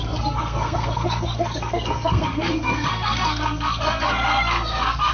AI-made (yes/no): yes